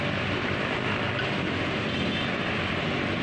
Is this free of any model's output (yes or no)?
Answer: yes